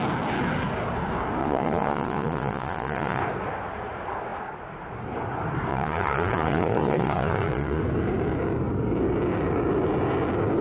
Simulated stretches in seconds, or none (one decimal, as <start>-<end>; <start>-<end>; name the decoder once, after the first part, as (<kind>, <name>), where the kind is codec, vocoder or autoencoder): 1.4-3.2 (vocoder, Vocos); 5.7-7.8